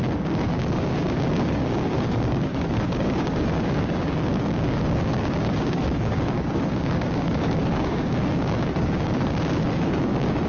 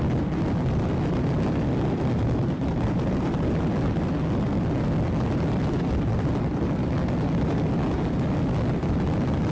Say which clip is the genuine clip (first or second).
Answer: second